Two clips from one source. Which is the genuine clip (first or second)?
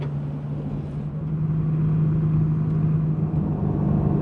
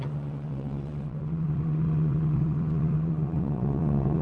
first